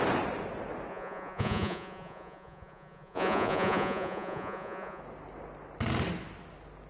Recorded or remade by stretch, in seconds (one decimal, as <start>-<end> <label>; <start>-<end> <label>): 0.0-0.9 recorded; 0.9-5.0 remade; 5.0-6.9 recorded